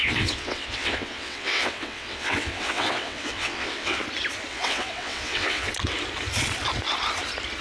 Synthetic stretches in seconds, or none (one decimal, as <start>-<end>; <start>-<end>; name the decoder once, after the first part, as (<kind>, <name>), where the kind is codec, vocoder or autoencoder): 0.0-4.0 (vocoder, WaveNeXt); 4.5-5.7